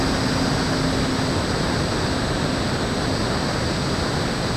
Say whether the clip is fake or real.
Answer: real